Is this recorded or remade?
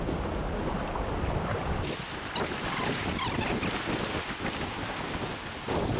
recorded